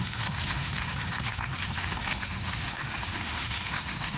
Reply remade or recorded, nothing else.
remade